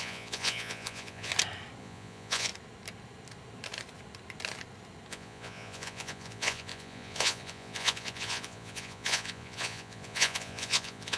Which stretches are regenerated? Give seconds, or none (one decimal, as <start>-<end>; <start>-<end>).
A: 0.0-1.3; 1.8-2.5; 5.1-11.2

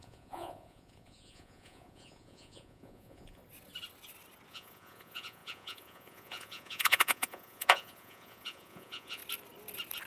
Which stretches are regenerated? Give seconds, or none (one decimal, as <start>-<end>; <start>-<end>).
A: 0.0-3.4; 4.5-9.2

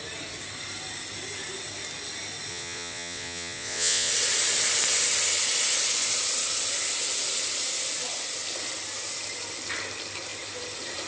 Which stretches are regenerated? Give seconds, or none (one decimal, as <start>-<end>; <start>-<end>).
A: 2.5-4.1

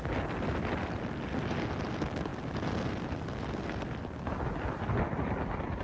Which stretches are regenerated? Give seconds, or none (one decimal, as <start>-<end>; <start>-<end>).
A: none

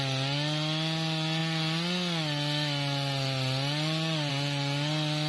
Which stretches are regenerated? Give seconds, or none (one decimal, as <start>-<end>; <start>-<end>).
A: none